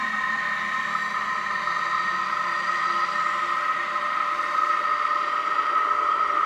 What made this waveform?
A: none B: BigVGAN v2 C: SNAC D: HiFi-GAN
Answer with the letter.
A